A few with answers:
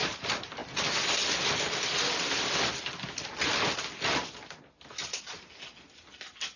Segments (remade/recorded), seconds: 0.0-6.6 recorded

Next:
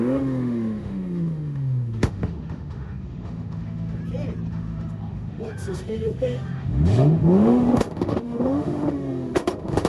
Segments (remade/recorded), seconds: 0.0-4.0 remade; 4.0-4.5 recorded; 4.5-9.9 remade

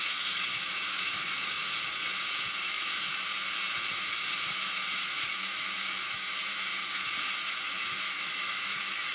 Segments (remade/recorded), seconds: 0.0-1.6 remade; 1.6-2.6 recorded; 2.6-3.3 remade; 3.3-3.9 recorded; 3.9-9.1 remade

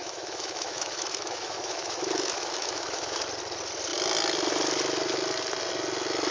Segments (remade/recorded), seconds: 0.0-3.2 remade; 3.2-6.3 recorded

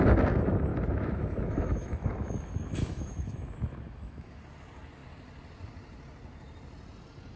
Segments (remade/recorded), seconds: 0.0-0.7 recorded; 0.7-4.4 remade; 4.4-7.4 recorded

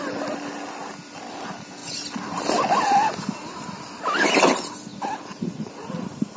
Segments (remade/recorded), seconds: 0.0-6.4 recorded

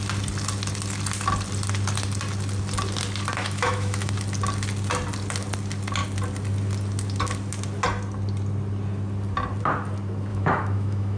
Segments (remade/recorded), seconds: 0.0-3.4 recorded; 3.4-4.1 remade; 4.1-10.3 recorded; 10.3-11.2 remade

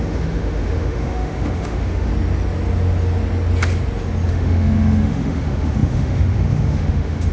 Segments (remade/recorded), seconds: 0.0-2.1 remade; 2.1-4.3 recorded; 4.3-7.3 remade